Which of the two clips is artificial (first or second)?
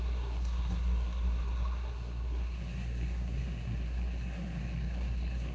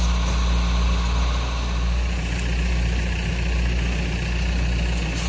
first